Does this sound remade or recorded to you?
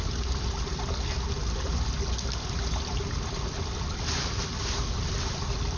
recorded